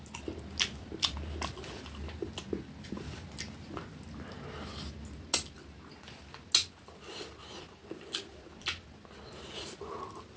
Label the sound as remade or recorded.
recorded